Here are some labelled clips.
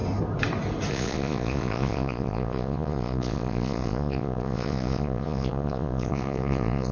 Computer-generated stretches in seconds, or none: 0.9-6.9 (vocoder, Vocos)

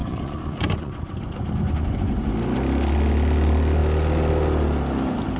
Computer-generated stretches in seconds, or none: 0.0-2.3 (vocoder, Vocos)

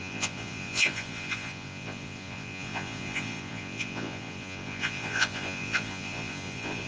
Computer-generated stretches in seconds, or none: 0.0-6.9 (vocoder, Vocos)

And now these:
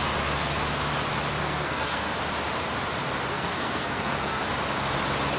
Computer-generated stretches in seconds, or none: 1.4-2.2 (codec, SNAC); 3.3-4.5

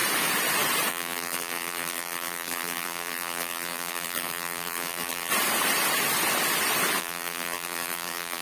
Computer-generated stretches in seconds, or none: 0.9-5.3 (vocoder, BigVGAN v2); 7.0-8.4